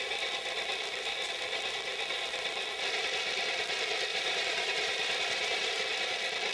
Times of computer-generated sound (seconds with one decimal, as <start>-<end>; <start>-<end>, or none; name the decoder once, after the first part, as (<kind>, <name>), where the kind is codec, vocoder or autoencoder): 4.1-5.7 (vocoder, BigVGAN v2)